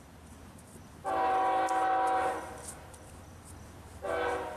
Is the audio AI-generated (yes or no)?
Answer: no